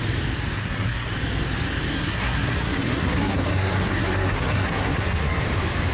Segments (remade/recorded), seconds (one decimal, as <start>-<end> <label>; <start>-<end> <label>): 0.0-0.6 recorded; 0.6-1.1 remade; 1.1-1.9 recorded; 1.9-5.4 remade; 5.4-5.9 recorded